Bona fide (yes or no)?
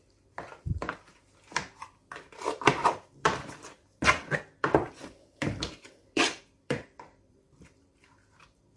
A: no